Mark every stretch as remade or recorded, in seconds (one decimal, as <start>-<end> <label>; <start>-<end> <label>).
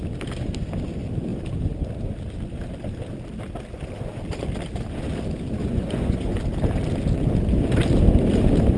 0.0-5.6 recorded; 5.6-6.4 remade; 6.4-8.8 recorded